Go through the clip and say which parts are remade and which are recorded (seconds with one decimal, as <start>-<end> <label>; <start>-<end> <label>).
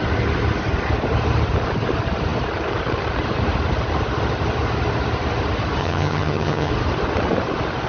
0.0-5.8 recorded; 5.8-6.7 remade; 6.7-7.9 recorded